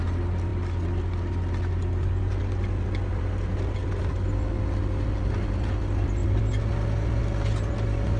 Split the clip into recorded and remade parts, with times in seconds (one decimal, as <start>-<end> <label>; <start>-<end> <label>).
0.0-8.2 recorded

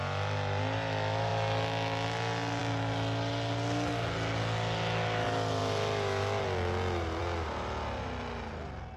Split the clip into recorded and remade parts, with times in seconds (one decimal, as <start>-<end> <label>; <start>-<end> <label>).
0.0-9.0 recorded

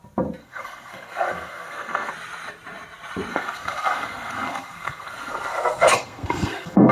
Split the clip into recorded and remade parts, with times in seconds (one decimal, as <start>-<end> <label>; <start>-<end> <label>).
0.0-0.4 recorded; 0.4-2.1 remade; 2.1-3.3 recorded; 3.3-6.9 remade

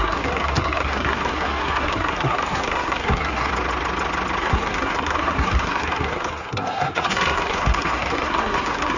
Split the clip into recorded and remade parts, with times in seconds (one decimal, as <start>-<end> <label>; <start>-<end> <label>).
0.0-3.5 remade; 3.5-4.4 recorded; 4.4-9.0 remade

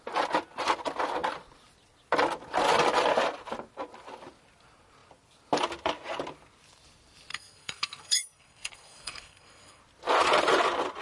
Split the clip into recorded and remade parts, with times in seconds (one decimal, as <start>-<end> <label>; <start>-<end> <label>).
0.0-7.3 recorded; 7.3-9.8 remade; 9.8-11.0 recorded

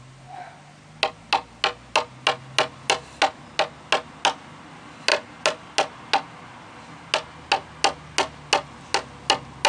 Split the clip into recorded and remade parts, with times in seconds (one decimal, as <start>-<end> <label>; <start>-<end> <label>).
0.0-9.7 recorded

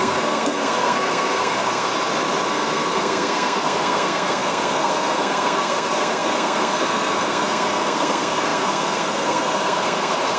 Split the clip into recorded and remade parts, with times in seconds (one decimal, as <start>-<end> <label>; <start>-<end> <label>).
0.0-1.9 remade; 1.9-2.5 recorded; 2.5-10.4 remade

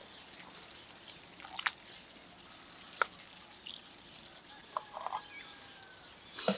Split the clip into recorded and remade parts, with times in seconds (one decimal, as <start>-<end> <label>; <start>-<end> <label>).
0.0-6.6 recorded